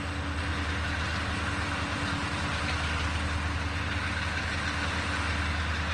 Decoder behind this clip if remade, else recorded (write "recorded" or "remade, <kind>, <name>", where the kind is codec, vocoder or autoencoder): recorded